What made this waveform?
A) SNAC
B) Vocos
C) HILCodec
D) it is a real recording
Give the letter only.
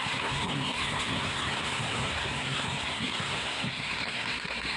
A